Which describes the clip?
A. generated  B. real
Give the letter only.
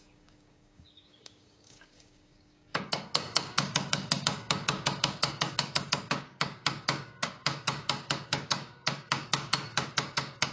A